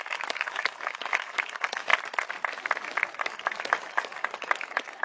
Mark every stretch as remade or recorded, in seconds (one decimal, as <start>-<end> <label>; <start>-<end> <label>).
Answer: 0.0-1.9 remade; 1.9-3.1 recorded; 3.1-5.0 remade